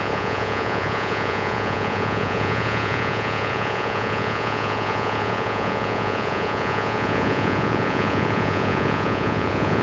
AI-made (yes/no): yes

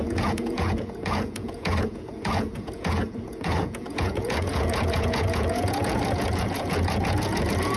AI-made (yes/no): yes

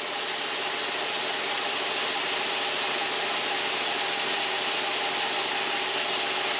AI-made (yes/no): no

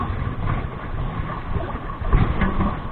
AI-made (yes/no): no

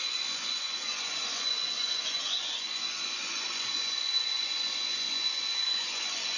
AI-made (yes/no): yes